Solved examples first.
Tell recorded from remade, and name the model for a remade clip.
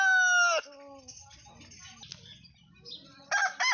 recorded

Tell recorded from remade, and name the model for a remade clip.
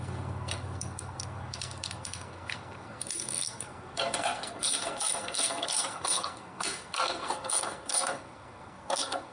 remade, codec, SNAC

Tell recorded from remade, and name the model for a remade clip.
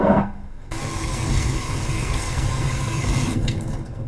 remade, codec, SNAC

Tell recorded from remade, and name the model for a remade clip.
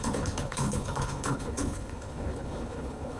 remade, codec, HILCodec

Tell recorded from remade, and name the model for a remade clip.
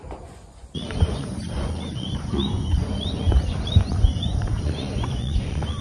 remade, vocoder, Vocos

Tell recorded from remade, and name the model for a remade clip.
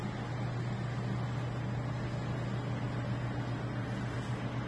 recorded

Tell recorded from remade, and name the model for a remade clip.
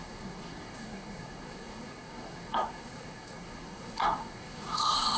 remade, codec, SNAC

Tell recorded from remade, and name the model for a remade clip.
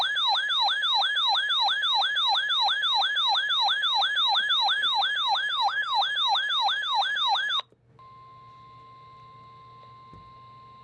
recorded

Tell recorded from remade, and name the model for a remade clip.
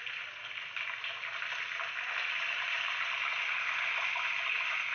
recorded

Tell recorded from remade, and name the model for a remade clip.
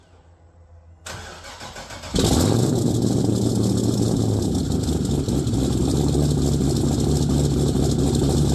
recorded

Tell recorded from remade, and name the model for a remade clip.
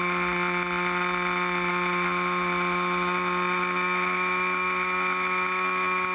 recorded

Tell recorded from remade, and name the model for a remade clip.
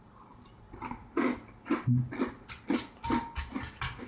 recorded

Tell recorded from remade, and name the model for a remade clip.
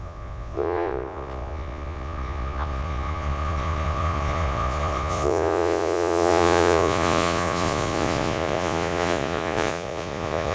remade, vocoder, Vocos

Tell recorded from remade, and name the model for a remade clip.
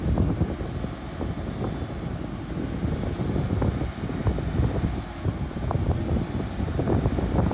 recorded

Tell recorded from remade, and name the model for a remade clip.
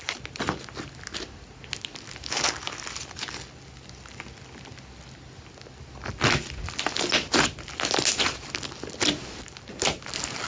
recorded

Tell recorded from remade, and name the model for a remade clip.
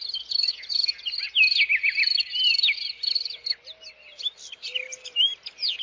recorded